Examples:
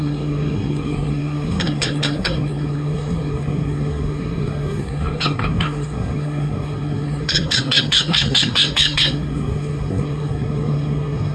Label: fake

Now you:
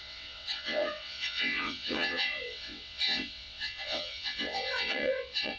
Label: fake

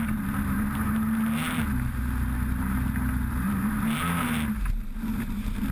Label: fake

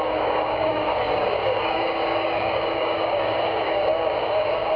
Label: fake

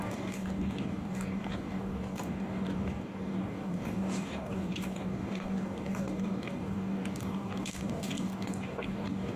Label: fake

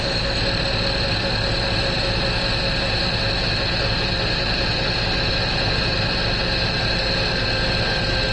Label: real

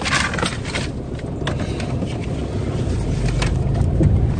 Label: real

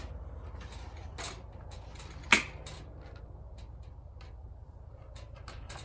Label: real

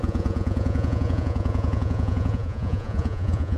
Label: fake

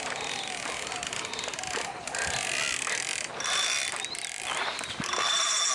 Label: real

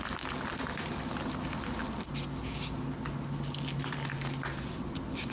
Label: real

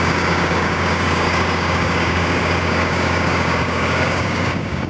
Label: fake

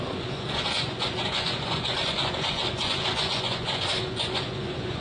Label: fake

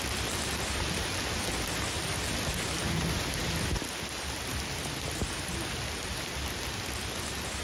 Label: real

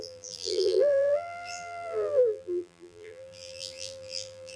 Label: fake